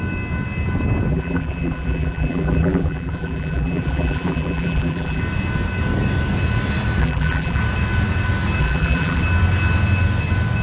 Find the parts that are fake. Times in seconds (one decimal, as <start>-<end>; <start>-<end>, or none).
1.1-5.2; 7.0-7.6; 8.6-9.2